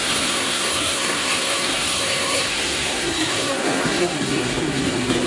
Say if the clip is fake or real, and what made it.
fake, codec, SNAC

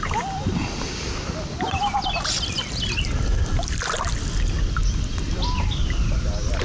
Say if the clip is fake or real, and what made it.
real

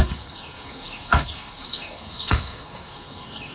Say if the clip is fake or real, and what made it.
fake, codec, SNAC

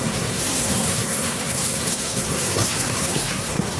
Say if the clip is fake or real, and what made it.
fake, codec, SNAC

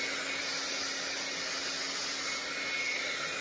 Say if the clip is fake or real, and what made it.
real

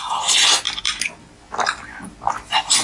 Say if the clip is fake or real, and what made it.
real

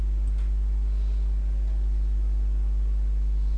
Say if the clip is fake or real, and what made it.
real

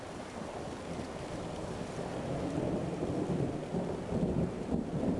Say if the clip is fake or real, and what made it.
real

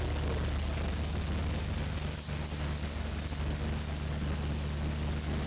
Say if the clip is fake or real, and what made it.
real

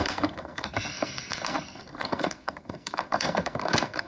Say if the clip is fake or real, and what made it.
fake, codec, SNAC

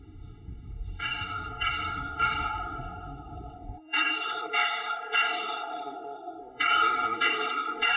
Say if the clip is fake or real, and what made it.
fake, codec, SNAC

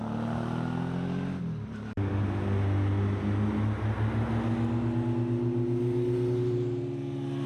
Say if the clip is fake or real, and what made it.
real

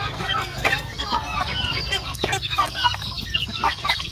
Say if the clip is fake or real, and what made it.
fake, codec, SNAC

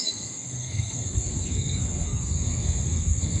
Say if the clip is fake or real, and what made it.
fake, codec, SNAC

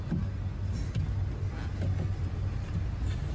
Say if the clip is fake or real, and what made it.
real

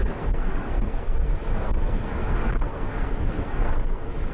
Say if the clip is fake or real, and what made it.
fake, codec, SNAC